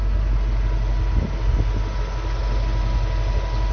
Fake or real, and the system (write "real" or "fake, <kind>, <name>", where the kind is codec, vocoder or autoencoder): real